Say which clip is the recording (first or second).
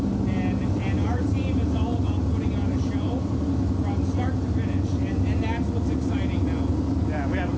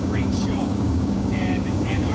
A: first